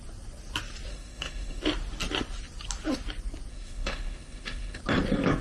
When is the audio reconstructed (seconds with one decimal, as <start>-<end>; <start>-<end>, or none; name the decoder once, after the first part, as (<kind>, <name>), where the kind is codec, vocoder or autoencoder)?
0.9-1.6 (autoencoder, DAC-VAE); 3.5-4.8